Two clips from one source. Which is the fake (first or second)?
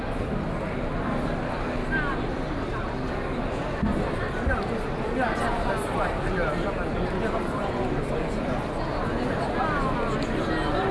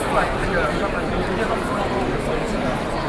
second